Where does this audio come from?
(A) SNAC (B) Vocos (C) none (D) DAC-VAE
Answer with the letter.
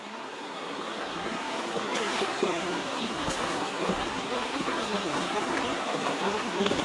A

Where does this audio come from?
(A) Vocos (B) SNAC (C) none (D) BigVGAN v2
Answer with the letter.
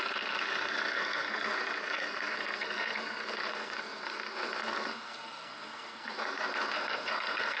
B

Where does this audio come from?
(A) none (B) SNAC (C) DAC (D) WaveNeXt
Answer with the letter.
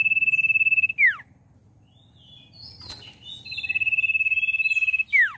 A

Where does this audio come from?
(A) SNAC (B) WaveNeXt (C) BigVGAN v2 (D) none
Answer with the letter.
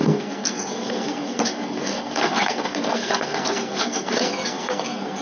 A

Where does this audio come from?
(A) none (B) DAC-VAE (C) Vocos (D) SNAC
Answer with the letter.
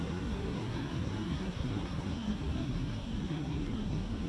D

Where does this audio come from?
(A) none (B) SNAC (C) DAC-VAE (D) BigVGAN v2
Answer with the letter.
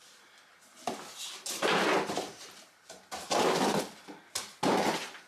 A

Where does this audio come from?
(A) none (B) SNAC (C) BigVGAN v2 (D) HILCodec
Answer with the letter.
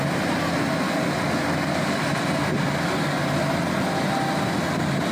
A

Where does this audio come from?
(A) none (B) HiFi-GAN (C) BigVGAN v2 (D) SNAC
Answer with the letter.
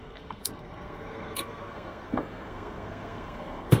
D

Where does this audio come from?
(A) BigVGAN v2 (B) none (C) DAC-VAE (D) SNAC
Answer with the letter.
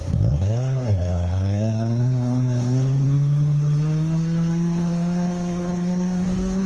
D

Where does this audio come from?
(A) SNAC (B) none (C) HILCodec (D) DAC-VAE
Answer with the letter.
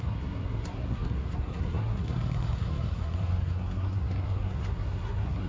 A